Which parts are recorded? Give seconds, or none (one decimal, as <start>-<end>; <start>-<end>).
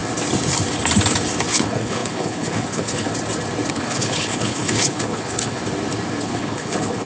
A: 0.0-1.5; 3.1-3.7; 5.6-6.2